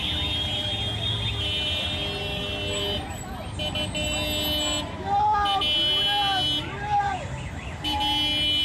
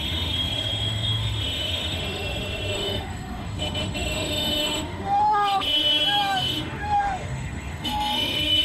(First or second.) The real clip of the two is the first